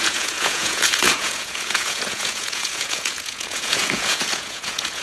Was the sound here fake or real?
fake